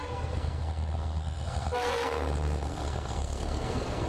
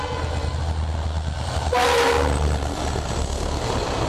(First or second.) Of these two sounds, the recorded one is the second